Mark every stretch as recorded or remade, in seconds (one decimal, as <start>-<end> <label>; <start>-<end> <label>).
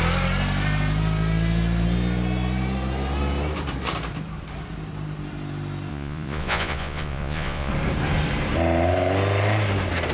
0.0-5.9 recorded; 5.9-7.7 remade; 7.7-10.1 recorded